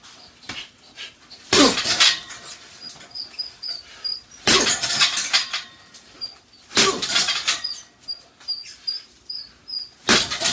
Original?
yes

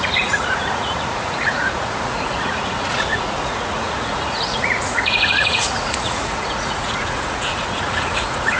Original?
no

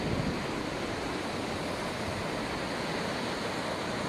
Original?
yes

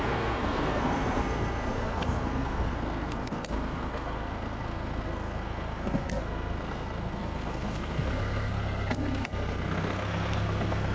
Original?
no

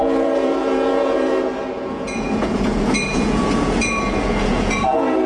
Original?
no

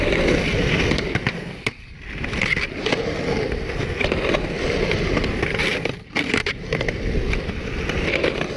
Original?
no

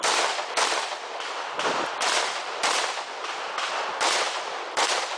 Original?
no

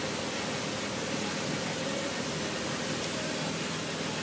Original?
yes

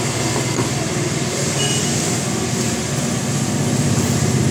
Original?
yes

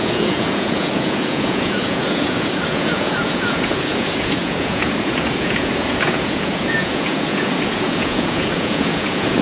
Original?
no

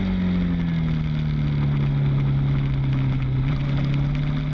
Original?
yes